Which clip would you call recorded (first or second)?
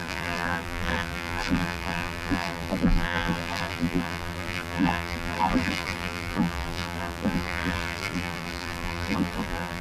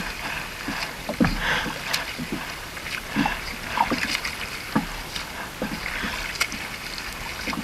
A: second